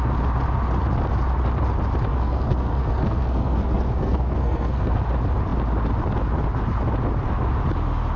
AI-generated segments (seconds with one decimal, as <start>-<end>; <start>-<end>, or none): 2.1-5.0